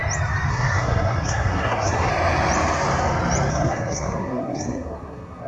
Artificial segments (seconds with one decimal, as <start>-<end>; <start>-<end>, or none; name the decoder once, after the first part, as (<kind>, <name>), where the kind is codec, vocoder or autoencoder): 0.5-2.1 (codec, SNAC); 3.5-5.5